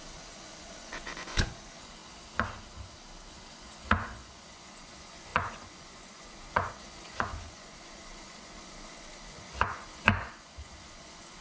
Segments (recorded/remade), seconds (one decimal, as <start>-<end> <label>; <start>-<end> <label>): 0.0-2.0 remade; 2.0-3.3 recorded; 3.3-11.4 remade